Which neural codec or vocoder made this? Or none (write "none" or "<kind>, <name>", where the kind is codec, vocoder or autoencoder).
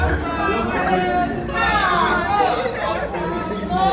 none